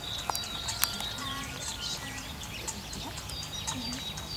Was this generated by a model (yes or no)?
no